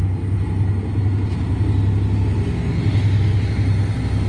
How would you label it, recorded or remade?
recorded